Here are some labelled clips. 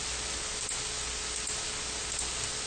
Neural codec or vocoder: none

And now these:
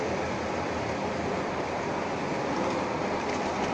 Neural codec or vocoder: none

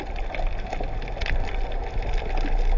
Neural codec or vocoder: none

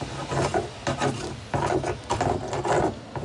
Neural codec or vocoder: none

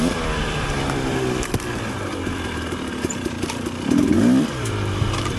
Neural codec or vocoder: vocoder, BigVGAN v2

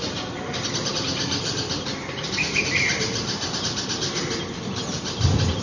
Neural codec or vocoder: none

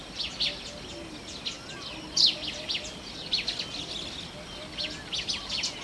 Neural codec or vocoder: none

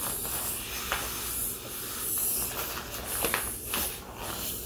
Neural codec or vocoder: none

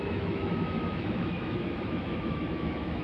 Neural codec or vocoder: autoencoder, DAC-VAE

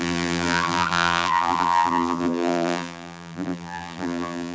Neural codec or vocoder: vocoder, BigVGAN v2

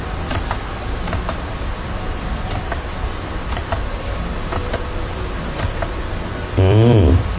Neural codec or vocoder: vocoder, BigVGAN v2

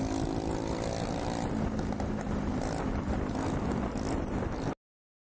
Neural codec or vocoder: none